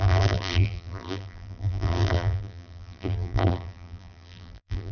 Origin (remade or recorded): remade